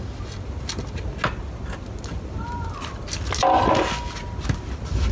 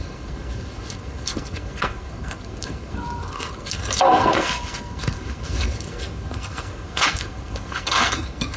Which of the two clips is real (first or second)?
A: first